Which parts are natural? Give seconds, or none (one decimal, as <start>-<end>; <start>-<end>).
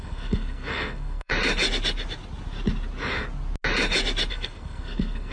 1.3-4.3